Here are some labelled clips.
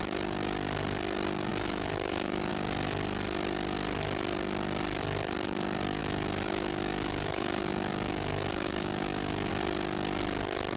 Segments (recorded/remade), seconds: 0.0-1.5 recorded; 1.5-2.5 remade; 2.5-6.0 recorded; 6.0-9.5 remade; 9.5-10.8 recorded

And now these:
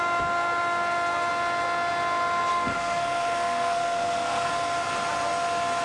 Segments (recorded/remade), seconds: 0.0-2.5 recorded; 2.5-4.5 remade; 4.5-5.8 recorded